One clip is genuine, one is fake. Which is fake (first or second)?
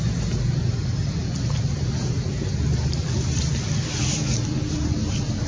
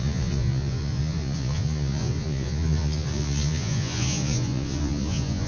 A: second